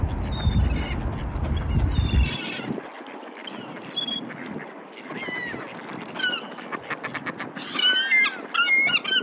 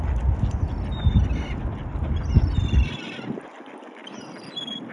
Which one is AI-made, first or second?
second